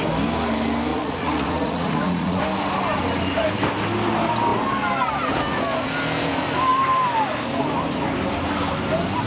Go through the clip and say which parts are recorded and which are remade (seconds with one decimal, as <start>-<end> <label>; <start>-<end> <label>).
0.0-0.9 recorded; 0.9-2.4 remade; 2.4-9.3 recorded